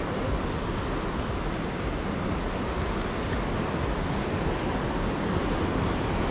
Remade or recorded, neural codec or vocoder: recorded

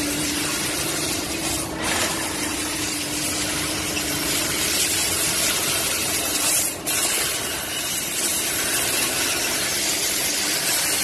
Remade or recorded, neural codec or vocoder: remade, vocoder, BigVGAN v2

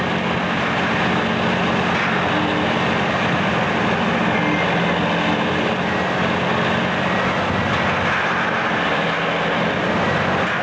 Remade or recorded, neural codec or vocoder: recorded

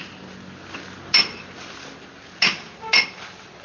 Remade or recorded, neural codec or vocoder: recorded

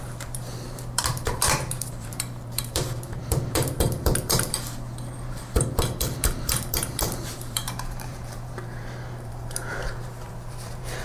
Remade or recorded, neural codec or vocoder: remade, vocoder, BigVGAN v2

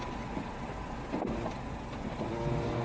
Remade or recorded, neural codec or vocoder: recorded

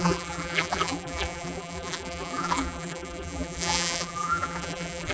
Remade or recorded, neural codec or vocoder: remade, vocoder, BigVGAN v2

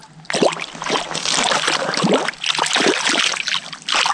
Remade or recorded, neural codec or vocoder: recorded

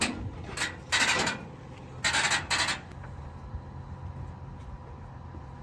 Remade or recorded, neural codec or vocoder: recorded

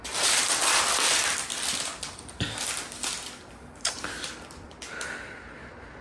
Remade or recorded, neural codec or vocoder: remade, vocoder, BigVGAN v2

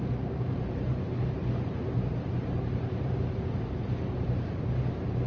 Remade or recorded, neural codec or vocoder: remade, vocoder, BigVGAN v2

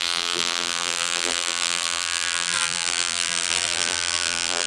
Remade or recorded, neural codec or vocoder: remade, vocoder, BigVGAN v2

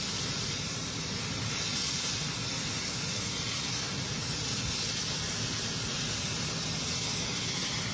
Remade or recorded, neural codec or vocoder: recorded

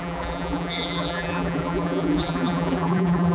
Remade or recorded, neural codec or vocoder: remade, vocoder, BigVGAN v2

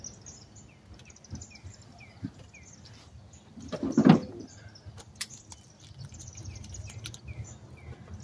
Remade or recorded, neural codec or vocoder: recorded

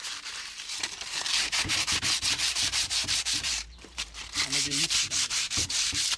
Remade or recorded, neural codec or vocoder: remade, vocoder, BigVGAN v2